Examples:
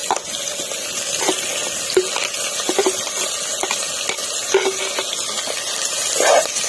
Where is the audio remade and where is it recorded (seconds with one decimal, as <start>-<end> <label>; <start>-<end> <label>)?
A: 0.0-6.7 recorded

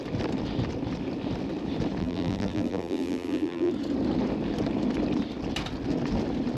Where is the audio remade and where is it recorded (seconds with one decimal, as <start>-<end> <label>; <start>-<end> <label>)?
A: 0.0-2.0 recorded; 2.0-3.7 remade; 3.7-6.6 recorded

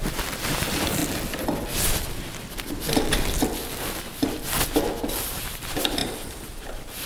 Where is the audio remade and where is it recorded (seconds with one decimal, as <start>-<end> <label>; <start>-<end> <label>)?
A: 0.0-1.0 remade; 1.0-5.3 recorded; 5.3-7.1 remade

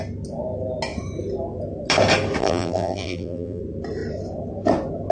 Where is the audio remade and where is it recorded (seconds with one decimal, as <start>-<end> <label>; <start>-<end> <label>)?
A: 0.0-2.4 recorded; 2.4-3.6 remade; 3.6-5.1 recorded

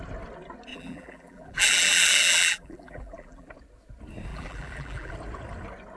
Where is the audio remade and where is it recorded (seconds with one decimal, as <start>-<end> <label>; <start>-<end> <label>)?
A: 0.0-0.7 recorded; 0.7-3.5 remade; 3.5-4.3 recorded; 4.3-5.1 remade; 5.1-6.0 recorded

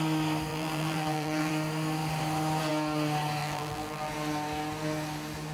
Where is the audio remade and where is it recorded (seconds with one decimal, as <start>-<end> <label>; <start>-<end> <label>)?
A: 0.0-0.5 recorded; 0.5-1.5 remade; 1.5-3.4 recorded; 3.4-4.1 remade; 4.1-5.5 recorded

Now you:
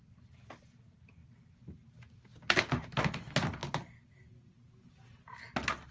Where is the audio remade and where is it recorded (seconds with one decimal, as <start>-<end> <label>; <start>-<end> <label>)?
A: 0.0-5.9 recorded

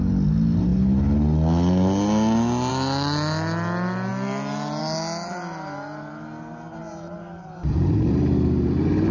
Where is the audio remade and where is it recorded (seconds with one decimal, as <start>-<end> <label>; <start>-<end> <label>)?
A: 0.0-6.8 recorded; 6.8-7.8 remade; 7.8-9.1 recorded